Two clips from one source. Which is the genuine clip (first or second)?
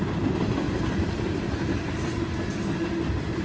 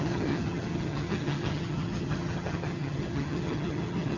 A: first